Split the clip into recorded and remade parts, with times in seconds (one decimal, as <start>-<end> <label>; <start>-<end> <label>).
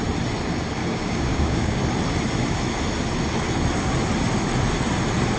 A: 0.0-0.8 recorded; 0.8-1.8 remade; 1.8-5.4 recorded